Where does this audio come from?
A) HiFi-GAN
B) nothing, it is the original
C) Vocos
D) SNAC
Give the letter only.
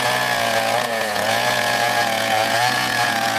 C